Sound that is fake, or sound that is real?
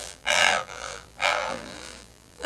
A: fake